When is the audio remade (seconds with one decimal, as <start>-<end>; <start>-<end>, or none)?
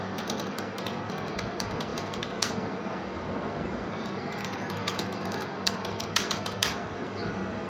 0.0-7.7